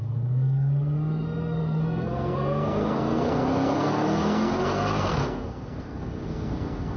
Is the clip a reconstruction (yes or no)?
yes